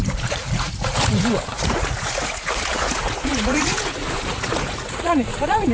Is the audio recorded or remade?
remade